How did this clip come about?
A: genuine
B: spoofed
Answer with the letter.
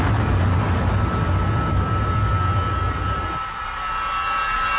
A